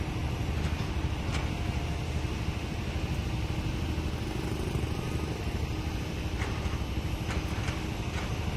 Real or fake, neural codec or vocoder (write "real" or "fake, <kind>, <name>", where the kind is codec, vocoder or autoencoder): real